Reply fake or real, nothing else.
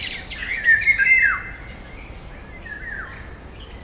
real